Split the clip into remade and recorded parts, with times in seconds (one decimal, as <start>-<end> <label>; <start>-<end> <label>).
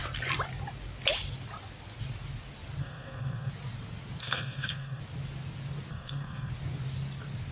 0.0-2.8 recorded; 2.8-3.5 remade; 3.5-4.2 recorded; 4.2-5.0 remade; 5.0-5.9 recorded; 5.9-6.5 remade; 6.5-7.5 recorded